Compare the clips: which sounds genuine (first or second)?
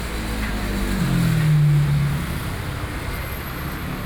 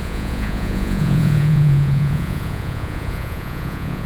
first